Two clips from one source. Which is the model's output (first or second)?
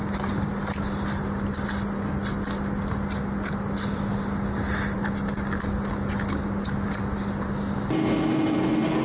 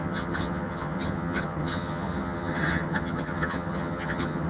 second